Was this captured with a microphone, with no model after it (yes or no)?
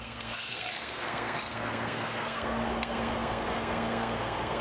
no